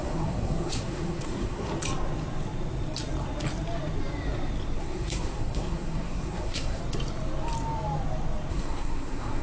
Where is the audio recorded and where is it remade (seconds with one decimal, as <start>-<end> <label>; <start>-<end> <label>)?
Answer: 0.0-1.7 remade; 1.7-4.8 recorded; 4.8-6.8 remade; 6.8-8.5 recorded; 8.5-9.4 remade